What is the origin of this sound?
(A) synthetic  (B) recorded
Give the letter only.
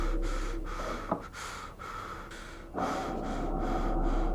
B